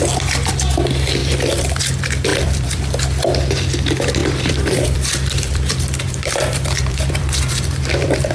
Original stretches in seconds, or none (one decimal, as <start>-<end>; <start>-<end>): 0.0-1.2; 1.8-2.3; 3.0-4.2